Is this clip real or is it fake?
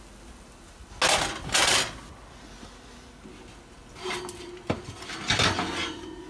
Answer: real